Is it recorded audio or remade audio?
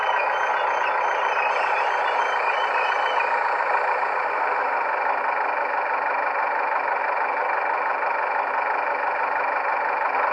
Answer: recorded